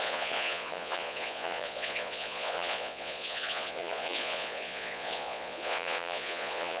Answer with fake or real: fake